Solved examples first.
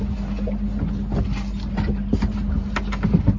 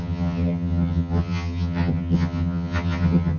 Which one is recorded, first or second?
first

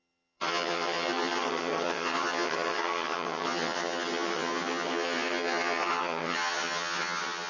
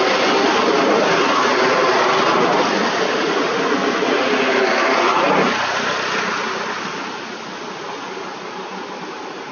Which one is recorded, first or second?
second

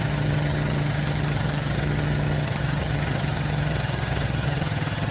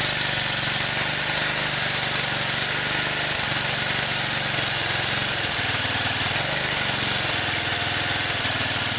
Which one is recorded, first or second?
second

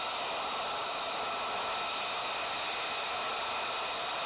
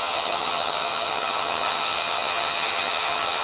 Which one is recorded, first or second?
first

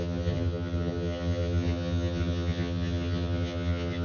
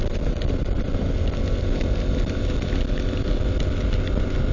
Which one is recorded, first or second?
second